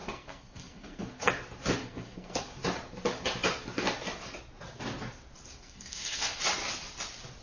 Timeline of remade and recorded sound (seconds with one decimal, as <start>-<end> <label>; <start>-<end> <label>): 0.0-1.3 remade; 1.3-1.8 recorded; 1.8-2.4 remade; 2.4-5.5 recorded; 5.5-6.4 remade; 6.4-7.4 recorded

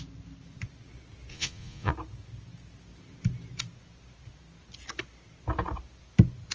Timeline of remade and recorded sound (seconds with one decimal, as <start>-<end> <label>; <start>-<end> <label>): 0.0-1.3 recorded; 1.3-1.9 remade; 1.9-6.5 recorded

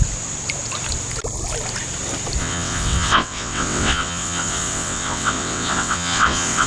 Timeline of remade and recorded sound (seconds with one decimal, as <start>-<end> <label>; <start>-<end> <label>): 0.0-2.4 recorded; 2.4-6.7 remade

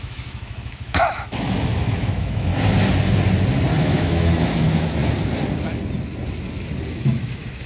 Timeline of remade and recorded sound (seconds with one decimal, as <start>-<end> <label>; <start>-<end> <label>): 0.0-2.5 remade; 2.5-3.8 recorded; 3.8-5.0 remade; 5.0-6.9 recorded; 6.9-7.7 remade

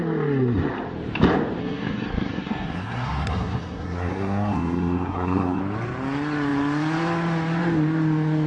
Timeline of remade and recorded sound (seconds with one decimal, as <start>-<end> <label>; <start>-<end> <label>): 0.0-1.6 recorded; 1.6-5.6 remade; 5.6-8.5 recorded

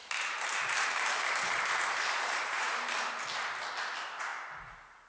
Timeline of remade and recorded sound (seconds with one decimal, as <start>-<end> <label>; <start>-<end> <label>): 0.0-3.1 remade; 3.1-5.1 recorded